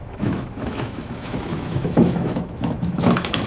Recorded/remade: remade